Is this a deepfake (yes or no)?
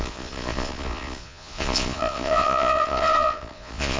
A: yes